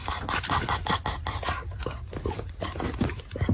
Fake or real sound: real